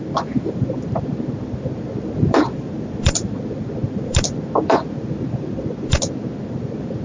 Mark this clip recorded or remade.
remade